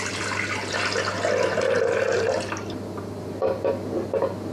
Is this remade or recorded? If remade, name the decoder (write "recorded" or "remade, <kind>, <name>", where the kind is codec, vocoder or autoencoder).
recorded